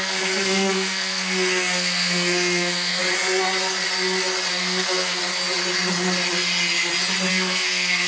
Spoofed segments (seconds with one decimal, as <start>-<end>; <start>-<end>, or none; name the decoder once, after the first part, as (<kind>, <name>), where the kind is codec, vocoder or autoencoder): 0.0-3.0 (codec, SNAC); 4.5-5.2; 7.3-8.1